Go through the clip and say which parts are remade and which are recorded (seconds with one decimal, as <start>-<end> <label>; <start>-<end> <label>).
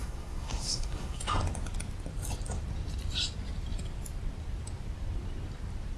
0.0-1.2 remade; 1.2-6.0 recorded